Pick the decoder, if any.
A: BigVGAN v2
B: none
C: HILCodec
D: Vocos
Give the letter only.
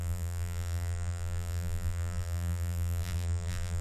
A